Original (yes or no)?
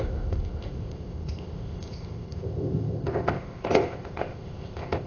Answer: no